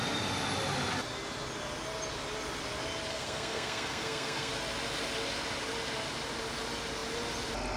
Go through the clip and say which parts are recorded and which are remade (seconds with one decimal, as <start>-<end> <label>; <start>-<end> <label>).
0.0-3.1 recorded; 3.1-4.5 remade; 4.5-7.8 recorded